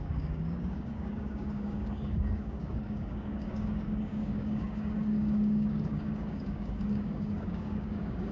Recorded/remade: remade